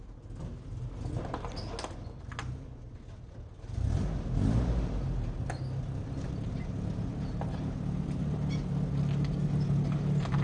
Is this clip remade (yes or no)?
no